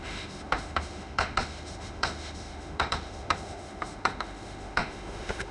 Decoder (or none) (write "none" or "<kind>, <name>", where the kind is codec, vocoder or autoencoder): autoencoder, DAC-VAE